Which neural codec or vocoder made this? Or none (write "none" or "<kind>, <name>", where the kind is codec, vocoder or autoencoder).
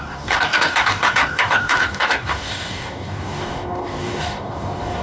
codec, DAC